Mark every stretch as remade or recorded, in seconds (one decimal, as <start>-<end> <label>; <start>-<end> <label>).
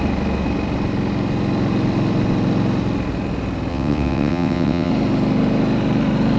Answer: 0.0-3.7 recorded; 3.7-4.9 remade; 4.9-6.4 recorded